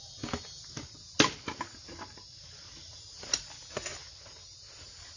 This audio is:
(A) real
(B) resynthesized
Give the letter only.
A